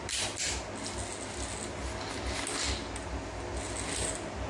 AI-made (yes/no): no